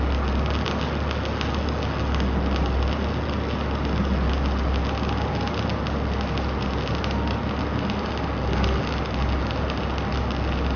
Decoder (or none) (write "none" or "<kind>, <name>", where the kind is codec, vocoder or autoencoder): none